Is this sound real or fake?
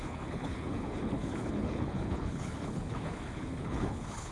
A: fake